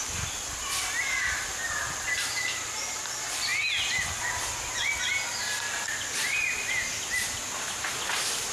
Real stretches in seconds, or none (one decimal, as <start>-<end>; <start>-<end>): 0.0-8.5